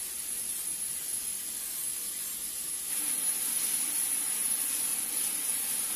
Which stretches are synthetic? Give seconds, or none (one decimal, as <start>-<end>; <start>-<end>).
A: 4.9-6.0